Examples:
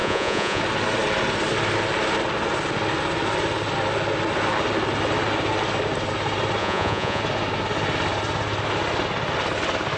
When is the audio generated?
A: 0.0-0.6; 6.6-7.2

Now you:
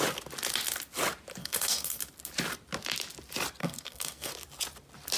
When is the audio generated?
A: 1.4-2.0; 3.6-4.3

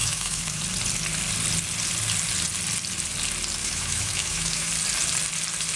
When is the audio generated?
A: 0.0-0.6; 3.6-4.7

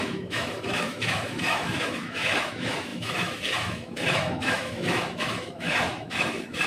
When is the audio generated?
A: 0.0-6.7